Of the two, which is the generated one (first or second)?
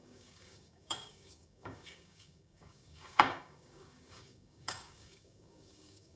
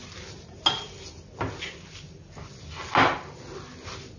first